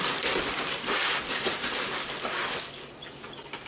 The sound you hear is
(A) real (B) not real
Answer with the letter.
A